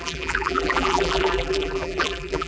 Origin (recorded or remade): remade